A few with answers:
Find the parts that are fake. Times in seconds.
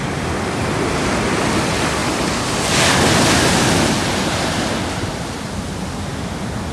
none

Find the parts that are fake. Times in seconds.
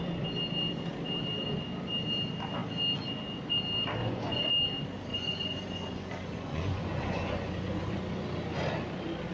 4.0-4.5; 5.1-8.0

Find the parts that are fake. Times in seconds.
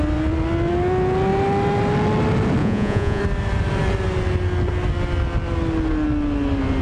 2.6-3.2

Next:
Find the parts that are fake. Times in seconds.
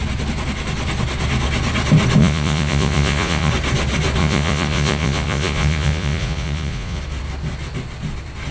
2.2-3.5; 4.2-7.0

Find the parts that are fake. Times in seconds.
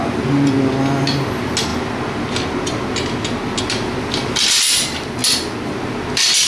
none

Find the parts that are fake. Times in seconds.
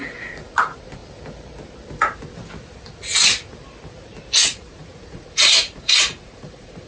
0.0-1.0; 4.4-6.9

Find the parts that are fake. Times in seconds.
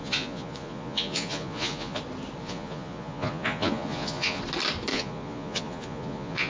0.0-2.0; 2.4-4.4; 4.9-6.5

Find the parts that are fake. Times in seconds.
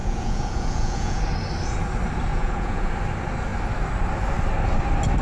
0.0-1.2; 2.3-2.9